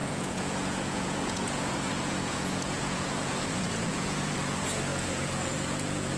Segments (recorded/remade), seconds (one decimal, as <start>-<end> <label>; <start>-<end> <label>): 0.0-6.2 remade